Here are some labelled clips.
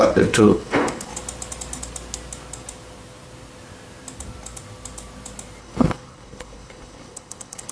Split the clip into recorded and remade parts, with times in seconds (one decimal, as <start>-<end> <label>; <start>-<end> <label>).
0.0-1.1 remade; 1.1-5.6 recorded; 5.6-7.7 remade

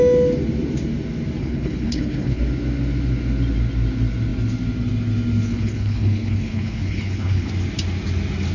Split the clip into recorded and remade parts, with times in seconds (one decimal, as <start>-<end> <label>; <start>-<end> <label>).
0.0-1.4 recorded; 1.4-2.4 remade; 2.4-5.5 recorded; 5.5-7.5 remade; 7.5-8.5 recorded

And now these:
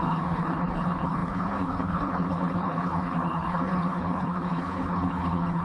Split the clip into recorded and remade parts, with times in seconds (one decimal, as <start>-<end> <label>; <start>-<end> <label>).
0.0-5.6 remade

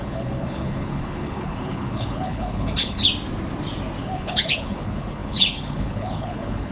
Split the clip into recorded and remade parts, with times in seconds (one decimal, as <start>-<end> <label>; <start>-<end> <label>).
0.0-3.0 remade; 3.0-4.0 recorded; 4.0-6.7 remade

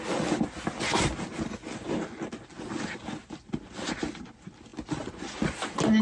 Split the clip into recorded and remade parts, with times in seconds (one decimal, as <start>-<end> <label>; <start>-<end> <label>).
0.0-6.0 recorded

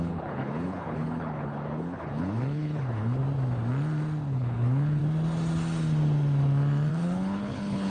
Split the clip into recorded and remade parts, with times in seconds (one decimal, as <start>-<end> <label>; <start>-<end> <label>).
0.0-3.2 remade; 3.2-4.3 recorded; 4.3-5.0 remade; 5.0-6.9 recorded; 6.9-7.9 remade

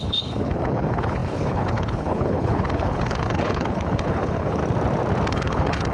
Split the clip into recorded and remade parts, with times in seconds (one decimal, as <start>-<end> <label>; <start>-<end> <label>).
0.0-4.6 remade; 4.6-5.3 recorded; 5.3-5.9 remade